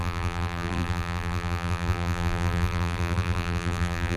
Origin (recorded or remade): remade